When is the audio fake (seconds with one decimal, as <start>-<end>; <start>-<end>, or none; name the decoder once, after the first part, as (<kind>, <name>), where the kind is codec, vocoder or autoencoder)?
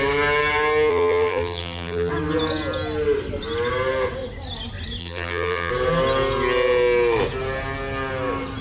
0.9-2.1 (vocoder, BigVGAN v2); 5.0-5.7